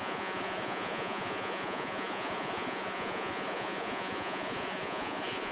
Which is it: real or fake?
fake